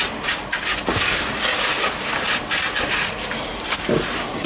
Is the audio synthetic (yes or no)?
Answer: yes